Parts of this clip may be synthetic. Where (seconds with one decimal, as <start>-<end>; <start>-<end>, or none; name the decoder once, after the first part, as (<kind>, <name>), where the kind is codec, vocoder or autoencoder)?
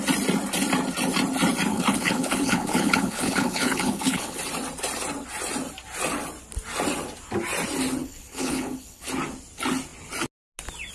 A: 1.7-4.4 (codec, HILCodec); 8.0-9.1